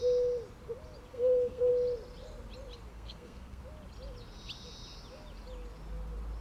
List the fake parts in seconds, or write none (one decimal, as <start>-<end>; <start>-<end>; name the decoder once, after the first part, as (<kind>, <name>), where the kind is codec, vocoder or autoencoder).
1.1-1.7 (codec, SNAC); 2.9-3.6